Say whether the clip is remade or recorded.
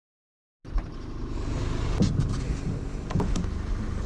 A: recorded